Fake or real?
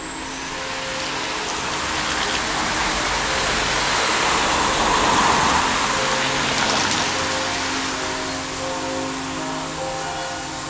real